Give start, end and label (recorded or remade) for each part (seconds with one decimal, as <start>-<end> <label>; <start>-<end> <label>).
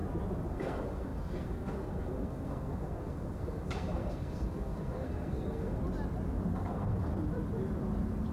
0.0-0.5 recorded; 0.5-5.8 remade; 5.8-6.5 recorded; 6.5-7.1 remade; 7.1-8.3 recorded